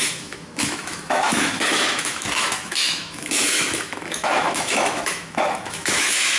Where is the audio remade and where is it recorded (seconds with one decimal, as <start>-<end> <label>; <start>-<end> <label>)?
0.0-6.4 remade